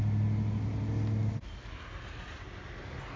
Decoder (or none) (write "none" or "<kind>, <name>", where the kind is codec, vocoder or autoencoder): none